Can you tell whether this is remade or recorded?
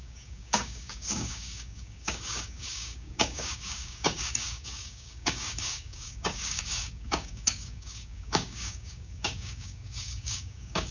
remade